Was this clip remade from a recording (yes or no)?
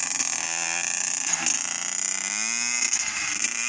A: no